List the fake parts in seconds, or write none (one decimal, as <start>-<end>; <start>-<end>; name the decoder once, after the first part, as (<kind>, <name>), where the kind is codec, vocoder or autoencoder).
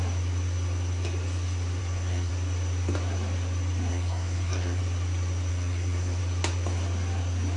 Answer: 1.8-2.3 (codec, SNAC); 3.9-4.8; 5.5-6.2